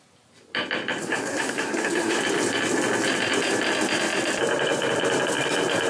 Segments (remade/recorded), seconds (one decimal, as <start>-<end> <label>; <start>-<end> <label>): 0.0-1.0 recorded; 1.0-2.2 remade; 2.2-5.9 recorded